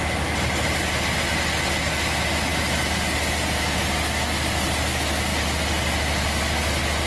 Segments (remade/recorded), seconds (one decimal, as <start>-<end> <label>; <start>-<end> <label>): 0.0-7.1 recorded